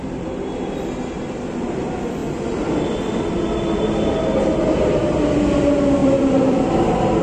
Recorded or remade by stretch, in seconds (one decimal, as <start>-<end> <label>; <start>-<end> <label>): 0.0-2.2 recorded; 2.2-3.2 remade; 3.2-6.0 recorded; 6.0-6.7 remade; 6.7-7.2 recorded